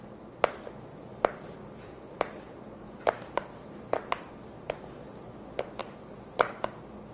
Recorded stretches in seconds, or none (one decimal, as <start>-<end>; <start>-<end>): 0.0-0.9; 4.9-5.8; 6.5-7.1